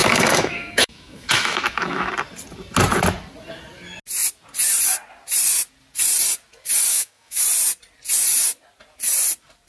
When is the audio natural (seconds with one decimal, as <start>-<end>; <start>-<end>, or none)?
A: 2.1-6.9; 7.4-9.7